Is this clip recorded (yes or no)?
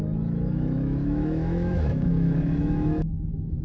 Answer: no